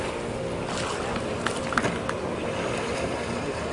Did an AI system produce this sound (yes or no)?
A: no